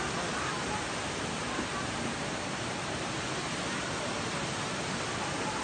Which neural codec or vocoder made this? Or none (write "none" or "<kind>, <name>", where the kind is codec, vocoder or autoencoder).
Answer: none